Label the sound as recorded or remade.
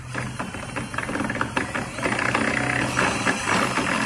recorded